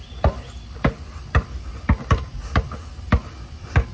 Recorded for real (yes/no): yes